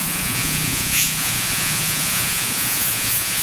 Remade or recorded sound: remade